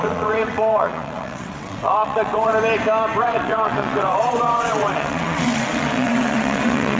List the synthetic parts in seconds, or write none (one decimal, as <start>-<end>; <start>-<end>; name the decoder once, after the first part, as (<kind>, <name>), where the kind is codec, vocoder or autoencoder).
0.0-2.5 (vocoder, WaveNeXt); 3.2-7.0